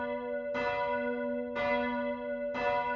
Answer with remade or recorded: recorded